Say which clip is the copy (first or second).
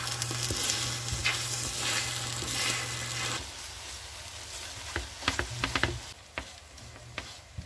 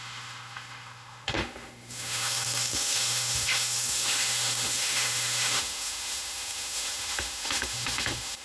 second